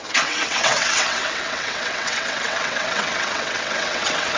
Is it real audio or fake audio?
fake